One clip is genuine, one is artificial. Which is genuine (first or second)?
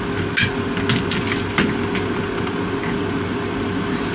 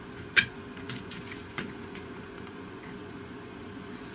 first